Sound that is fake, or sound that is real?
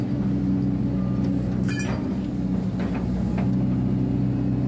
real